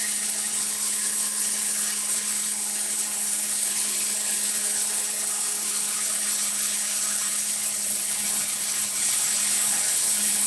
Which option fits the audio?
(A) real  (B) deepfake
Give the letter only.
B